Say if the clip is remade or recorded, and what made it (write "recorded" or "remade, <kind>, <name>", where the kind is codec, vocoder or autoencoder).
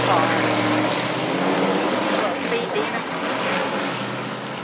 recorded